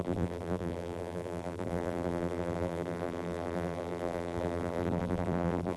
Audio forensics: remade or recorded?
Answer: remade